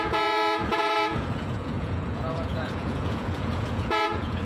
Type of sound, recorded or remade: remade